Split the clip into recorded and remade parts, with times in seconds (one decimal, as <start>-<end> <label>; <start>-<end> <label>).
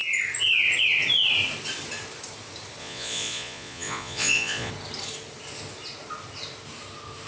0.0-2.8 recorded; 2.8-4.7 remade; 4.7-7.3 recorded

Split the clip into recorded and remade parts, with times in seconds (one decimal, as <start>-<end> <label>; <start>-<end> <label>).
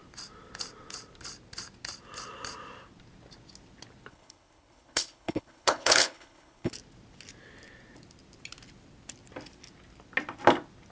0.0-4.1 recorded; 4.1-6.7 remade; 6.7-10.9 recorded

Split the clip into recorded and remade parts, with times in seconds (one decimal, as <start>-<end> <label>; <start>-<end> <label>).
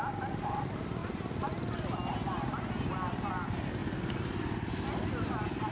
0.0-5.7 recorded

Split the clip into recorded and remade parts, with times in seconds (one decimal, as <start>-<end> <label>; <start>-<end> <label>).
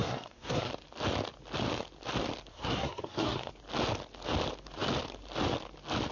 0.0-0.7 remade; 0.7-2.5 recorded; 2.5-3.5 remade; 3.5-6.1 recorded